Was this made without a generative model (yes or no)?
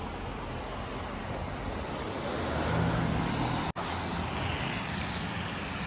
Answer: yes